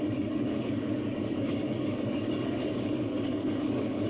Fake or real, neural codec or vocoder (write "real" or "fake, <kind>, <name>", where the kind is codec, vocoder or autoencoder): fake, codec, DAC